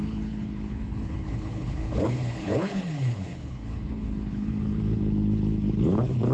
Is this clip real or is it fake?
fake